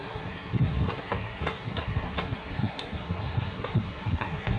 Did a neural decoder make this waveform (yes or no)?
yes